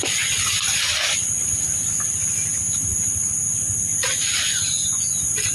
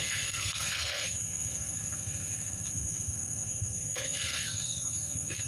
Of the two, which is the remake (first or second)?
second